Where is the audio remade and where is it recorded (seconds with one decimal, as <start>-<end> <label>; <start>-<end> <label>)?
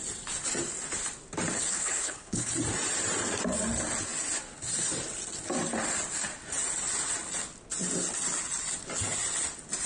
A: 0.0-1.7 recorded; 1.7-2.5 remade; 2.5-9.9 recorded